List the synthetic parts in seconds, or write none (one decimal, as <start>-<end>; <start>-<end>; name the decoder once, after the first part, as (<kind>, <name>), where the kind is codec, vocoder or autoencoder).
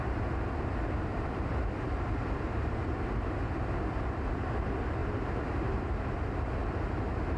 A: 1.1-3.2 (vocoder, BigVGAN v2); 5.0-5.8